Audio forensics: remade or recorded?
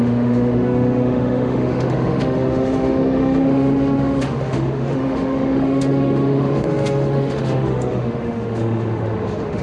remade